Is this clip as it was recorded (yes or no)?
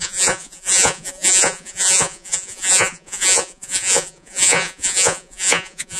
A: no